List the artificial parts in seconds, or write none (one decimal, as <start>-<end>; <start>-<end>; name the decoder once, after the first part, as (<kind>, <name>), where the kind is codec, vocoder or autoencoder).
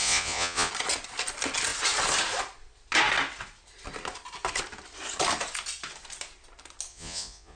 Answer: 0.0-0.7 (vocoder, Vocos); 6.9-7.6